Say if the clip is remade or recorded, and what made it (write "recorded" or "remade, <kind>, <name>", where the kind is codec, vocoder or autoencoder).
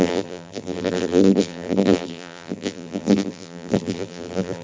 remade, vocoder, BigVGAN v2